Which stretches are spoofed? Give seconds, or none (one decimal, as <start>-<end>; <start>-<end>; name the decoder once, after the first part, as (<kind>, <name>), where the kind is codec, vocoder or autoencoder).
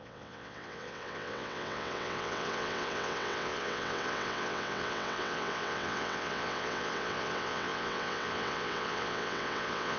0.0-10.0 (vocoder, WaveNeXt)